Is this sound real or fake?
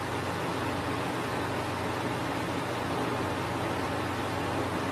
real